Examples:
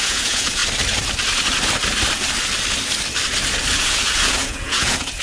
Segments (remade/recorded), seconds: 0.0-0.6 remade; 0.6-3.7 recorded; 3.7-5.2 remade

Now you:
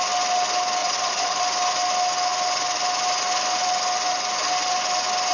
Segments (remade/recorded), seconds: 0.0-0.8 recorded; 0.8-1.4 remade; 1.4-5.3 recorded

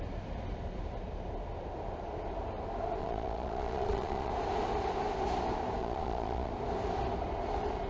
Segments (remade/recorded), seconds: 0.0-3.0 recorded; 3.0-4.3 remade; 4.3-5.8 recorded; 5.8-6.5 remade; 6.5-7.9 recorded